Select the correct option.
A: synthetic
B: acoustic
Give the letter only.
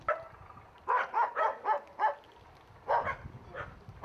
B